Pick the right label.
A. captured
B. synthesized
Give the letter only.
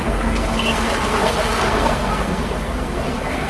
B